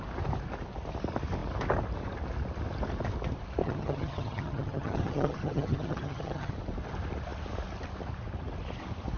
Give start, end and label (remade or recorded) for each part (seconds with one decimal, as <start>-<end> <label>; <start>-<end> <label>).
0.0-3.6 recorded; 3.6-6.5 remade; 6.5-9.2 recorded